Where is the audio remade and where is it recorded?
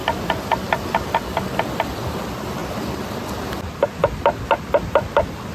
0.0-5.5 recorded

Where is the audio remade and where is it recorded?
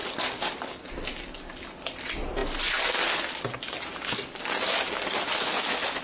0.0-6.0 recorded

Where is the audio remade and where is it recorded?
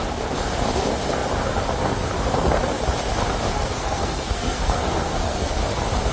0.0-3.5 recorded; 3.5-5.5 remade; 5.5-6.1 recorded